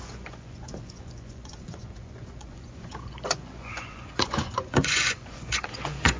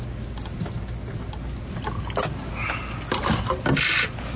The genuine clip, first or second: second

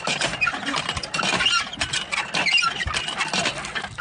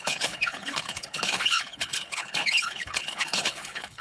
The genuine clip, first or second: first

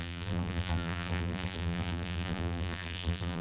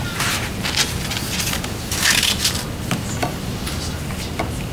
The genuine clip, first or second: second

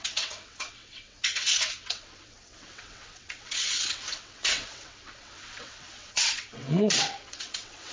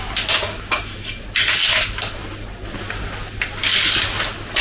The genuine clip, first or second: second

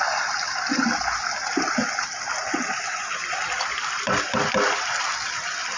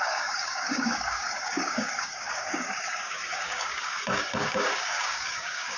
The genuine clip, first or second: first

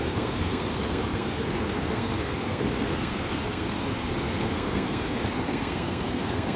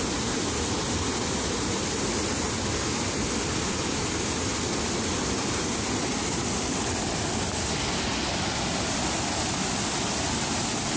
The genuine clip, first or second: second